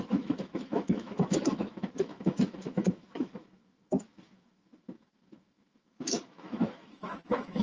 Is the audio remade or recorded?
remade